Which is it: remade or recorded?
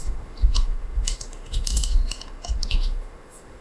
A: remade